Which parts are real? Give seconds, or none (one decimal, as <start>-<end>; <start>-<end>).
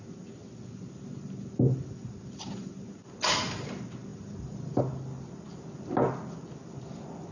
0.0-4.1; 4.8-7.3